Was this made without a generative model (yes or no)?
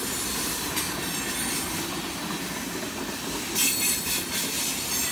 yes